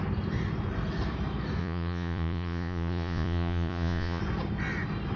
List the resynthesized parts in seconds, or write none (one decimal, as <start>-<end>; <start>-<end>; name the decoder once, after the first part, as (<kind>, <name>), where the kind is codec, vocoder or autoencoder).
1.6-4.2 (vocoder, Vocos)